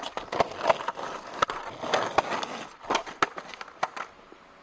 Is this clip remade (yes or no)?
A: no